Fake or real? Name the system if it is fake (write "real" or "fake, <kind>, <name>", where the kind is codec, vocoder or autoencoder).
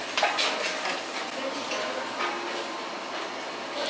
real